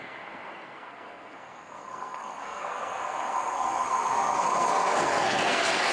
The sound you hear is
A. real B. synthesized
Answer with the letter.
B